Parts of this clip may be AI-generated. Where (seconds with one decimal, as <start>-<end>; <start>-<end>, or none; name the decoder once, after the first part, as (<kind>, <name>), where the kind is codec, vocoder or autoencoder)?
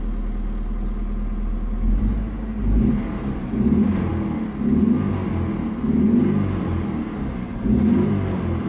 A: none